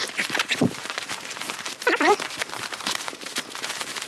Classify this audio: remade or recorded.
remade